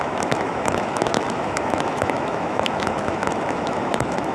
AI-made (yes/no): yes